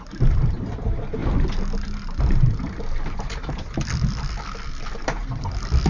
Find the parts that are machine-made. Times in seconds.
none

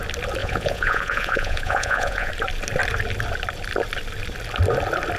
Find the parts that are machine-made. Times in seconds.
0.4-2.3 (vocoder, Vocos)

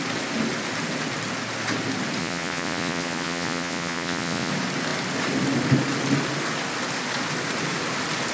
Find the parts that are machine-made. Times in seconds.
2.2-4.5 (vocoder, Vocos)